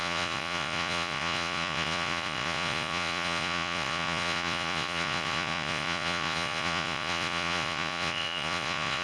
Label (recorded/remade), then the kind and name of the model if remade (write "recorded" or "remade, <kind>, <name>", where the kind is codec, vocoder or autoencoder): remade, vocoder, Vocos